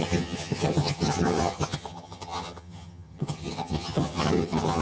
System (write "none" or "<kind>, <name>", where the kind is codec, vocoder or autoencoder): vocoder, HiFi-GAN